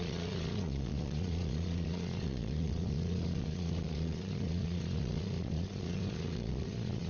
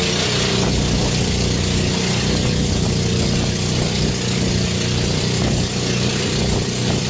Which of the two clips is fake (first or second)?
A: first